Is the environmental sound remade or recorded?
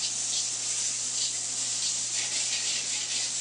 recorded